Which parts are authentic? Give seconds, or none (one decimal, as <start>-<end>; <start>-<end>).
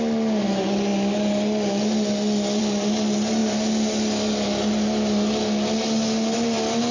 0.0-6.9